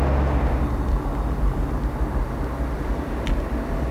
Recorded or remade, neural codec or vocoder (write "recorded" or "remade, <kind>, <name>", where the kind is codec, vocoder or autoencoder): recorded